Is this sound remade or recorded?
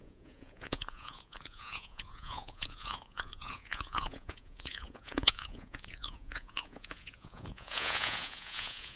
remade